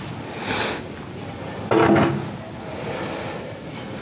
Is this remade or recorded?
recorded